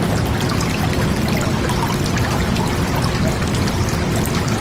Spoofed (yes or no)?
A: no